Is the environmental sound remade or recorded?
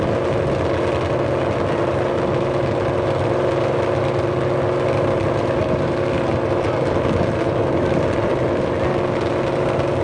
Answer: recorded